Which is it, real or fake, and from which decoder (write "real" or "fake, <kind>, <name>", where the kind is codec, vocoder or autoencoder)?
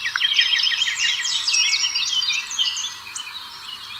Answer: fake, vocoder, BigVGAN v2